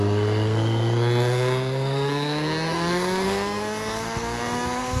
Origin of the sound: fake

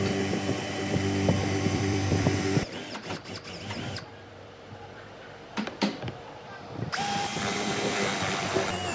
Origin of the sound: fake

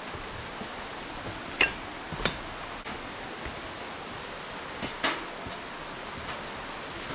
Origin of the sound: real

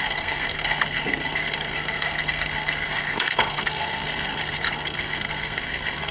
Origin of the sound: fake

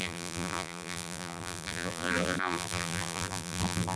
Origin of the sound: fake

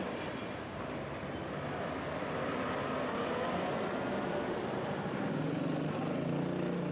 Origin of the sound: real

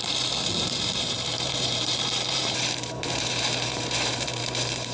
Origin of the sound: fake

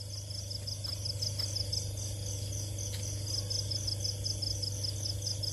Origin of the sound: real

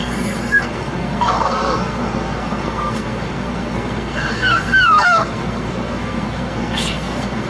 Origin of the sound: fake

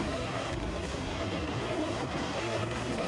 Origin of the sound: fake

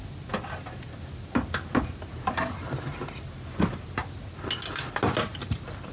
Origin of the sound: real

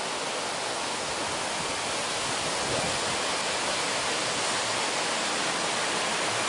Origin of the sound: real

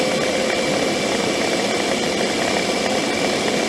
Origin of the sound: real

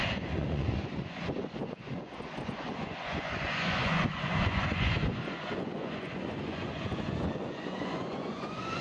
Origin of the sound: fake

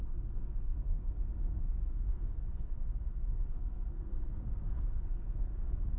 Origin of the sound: fake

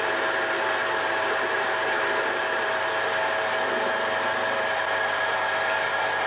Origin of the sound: real